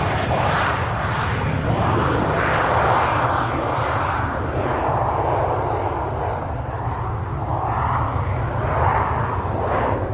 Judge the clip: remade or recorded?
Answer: recorded